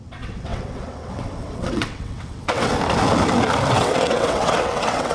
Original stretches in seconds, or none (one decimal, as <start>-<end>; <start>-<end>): 2.7-3.7